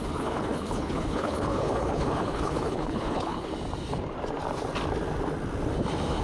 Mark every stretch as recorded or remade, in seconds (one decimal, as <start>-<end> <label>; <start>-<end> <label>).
0.0-3.5 remade; 3.5-6.2 recorded